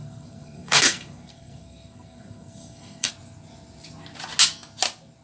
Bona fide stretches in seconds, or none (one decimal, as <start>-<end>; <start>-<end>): 3.1-5.2